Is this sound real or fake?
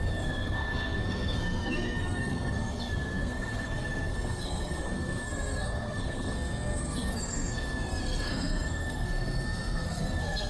fake